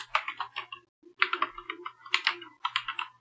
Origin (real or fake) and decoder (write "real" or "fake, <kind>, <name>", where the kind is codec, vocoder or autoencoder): real